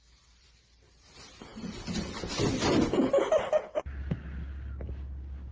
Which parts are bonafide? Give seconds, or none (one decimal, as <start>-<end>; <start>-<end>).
0.0-5.5